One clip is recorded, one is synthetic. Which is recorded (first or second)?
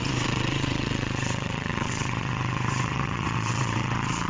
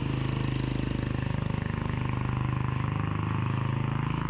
second